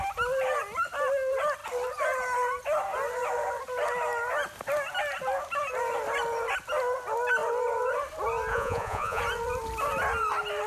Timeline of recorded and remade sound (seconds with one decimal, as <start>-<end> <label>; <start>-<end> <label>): 0.0-8.5 recorded; 8.5-9.2 remade; 9.2-10.7 recorded